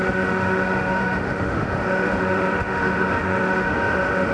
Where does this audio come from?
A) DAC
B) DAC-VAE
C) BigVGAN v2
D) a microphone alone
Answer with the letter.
B